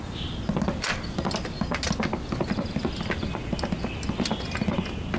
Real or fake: real